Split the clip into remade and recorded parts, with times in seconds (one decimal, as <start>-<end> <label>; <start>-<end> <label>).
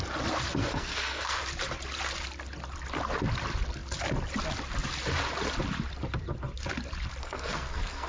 0.0-0.6 recorded; 0.6-1.4 remade; 1.4-7.2 recorded; 7.2-8.1 remade